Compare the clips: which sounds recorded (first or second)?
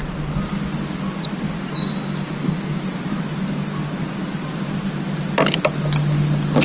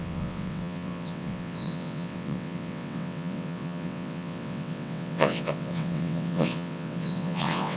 first